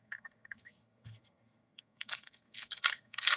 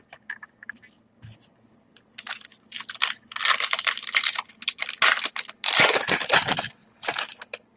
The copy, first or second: first